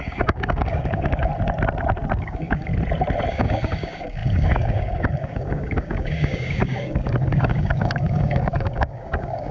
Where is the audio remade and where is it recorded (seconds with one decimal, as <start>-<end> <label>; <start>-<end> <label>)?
0.0-1.3 remade; 1.3-2.2 recorded; 2.2-2.7 remade; 2.7-3.3 recorded; 3.3-9.5 remade